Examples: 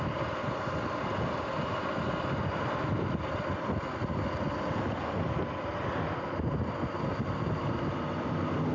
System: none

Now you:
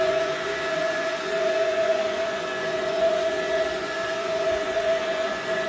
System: vocoder, Vocos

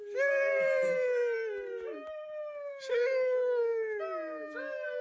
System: none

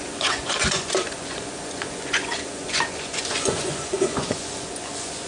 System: vocoder, Vocos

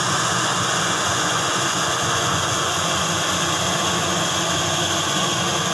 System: vocoder, Vocos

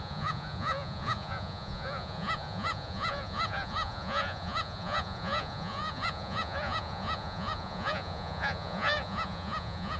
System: vocoder, Vocos